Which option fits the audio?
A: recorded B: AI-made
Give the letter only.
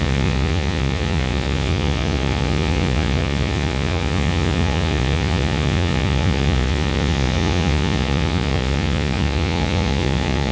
B